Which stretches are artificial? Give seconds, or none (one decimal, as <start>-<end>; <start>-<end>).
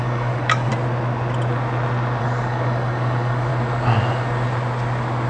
0.0-0.7; 2.2-3.5